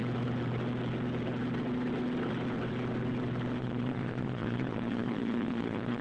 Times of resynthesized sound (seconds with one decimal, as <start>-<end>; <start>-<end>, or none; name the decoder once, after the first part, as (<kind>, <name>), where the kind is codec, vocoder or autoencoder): 3.6-6.0 (vocoder, Vocos)